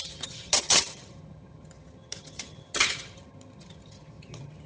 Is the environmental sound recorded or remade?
remade